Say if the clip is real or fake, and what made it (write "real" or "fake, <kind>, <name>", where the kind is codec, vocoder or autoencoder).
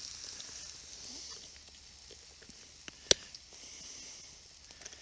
real